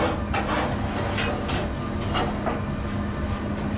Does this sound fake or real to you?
real